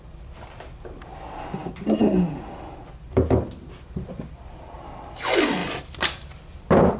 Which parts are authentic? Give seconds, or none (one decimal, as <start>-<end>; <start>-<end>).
0.0-5.6